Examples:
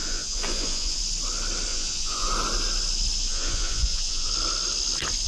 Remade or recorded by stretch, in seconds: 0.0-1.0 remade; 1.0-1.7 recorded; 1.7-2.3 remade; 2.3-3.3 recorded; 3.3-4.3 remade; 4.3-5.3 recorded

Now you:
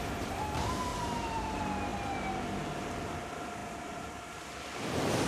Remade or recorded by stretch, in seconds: 0.0-0.9 recorded; 0.9-1.5 remade; 1.5-3.6 recorded; 3.6-4.4 remade; 4.4-5.3 recorded

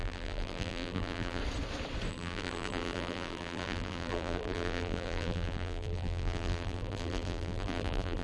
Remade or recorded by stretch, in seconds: 0.0-1.4 remade; 1.4-2.1 recorded; 2.1-8.2 remade